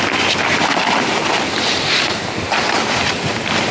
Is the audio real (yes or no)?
yes